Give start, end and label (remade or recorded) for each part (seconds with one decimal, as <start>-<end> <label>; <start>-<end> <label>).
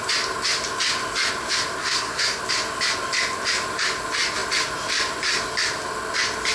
0.0-1.8 recorded; 1.8-2.4 remade; 2.4-6.5 recorded